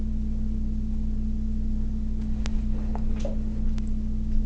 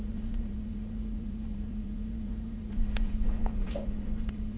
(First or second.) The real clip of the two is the first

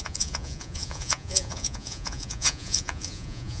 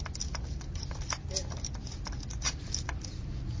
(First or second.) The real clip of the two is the second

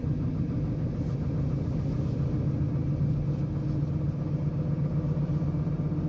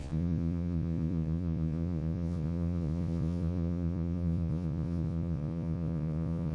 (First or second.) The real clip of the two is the first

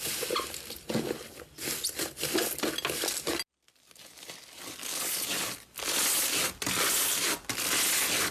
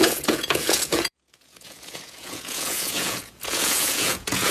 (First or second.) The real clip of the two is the first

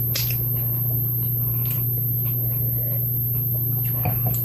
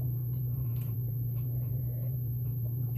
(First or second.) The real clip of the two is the first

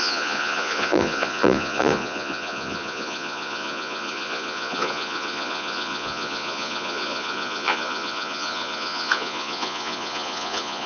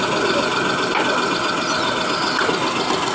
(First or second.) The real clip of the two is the second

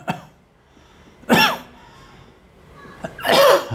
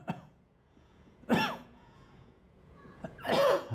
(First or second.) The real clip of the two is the first